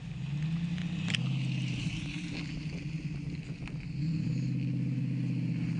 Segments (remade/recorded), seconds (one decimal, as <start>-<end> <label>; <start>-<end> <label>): 0.0-5.8 recorded